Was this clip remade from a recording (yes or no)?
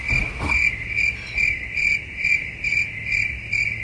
no